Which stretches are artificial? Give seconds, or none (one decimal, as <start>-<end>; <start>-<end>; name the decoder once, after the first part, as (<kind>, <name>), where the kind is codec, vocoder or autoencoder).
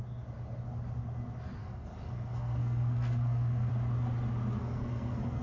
1.6-3.7 (codec, SNAC); 4.6-5.4